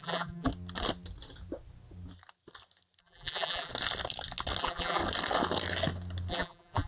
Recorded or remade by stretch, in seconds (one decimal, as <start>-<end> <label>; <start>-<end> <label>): 0.0-0.5 remade; 0.5-3.0 recorded; 3.0-3.7 remade; 3.7-4.6 recorded; 4.6-5.0 remade; 5.0-6.3 recorded; 6.3-6.9 remade

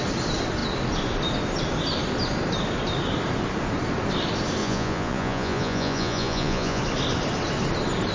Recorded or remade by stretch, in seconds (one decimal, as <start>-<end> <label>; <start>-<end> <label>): 0.0-4.6 recorded; 4.6-6.8 remade; 6.8-8.1 recorded